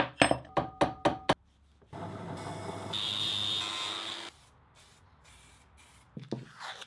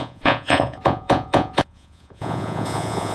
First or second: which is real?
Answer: first